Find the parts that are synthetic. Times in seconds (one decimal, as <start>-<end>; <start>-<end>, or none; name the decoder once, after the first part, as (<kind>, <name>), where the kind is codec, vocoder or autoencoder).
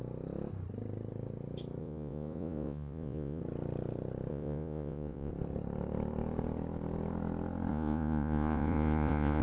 1.8-3.4 (vocoder, Vocos); 4.3-5.3; 7.7-9.4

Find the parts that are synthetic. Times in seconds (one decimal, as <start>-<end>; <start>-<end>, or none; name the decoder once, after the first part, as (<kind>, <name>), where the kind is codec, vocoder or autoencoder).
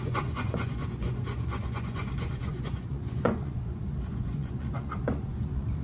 0.0-5.8 (vocoder, Vocos)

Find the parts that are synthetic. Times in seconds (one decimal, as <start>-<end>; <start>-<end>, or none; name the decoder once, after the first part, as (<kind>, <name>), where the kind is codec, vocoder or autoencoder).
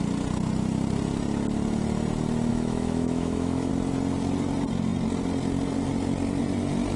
2.5-3.7 (autoencoder, DAC-VAE)